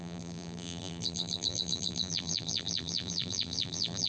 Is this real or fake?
fake